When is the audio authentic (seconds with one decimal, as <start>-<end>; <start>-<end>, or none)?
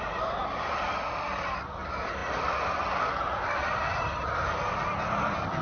0.4-0.9